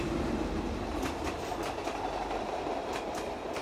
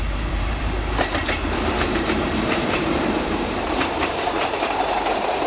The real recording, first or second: first